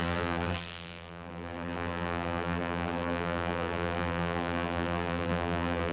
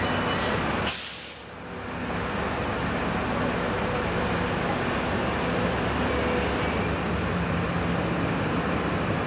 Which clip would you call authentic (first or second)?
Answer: second